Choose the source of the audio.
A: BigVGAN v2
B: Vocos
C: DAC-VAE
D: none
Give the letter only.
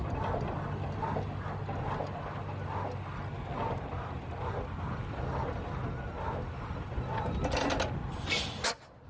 D